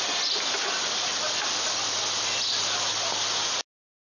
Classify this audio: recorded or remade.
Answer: recorded